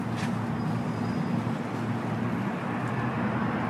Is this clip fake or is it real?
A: real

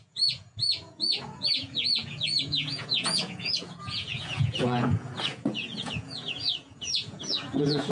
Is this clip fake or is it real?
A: fake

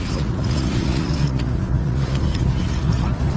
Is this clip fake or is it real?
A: fake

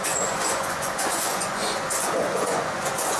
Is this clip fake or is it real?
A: fake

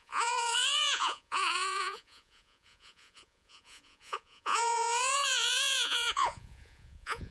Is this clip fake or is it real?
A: fake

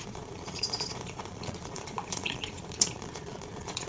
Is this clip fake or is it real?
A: fake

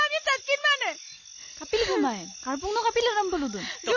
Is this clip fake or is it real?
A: real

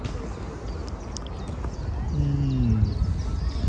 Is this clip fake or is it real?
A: real